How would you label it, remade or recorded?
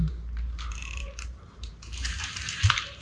remade